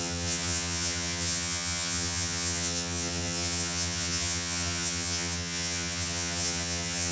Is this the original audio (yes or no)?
no